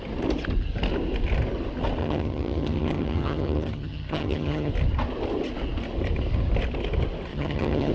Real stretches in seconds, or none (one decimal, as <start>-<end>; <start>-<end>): 0.0-2.0; 4.7-7.3